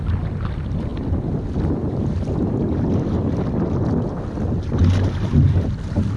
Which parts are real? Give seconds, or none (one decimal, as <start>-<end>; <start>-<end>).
0.0-6.2